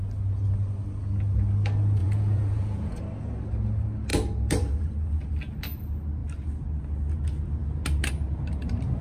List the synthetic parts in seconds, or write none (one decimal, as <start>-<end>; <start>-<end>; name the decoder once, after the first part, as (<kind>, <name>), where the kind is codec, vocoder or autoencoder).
2.0-3.0 (vocoder, Vocos)